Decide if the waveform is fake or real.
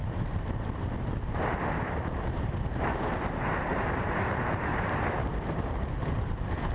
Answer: fake